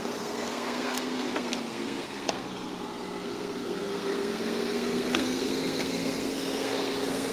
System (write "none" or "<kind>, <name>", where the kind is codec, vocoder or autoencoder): codec, SNAC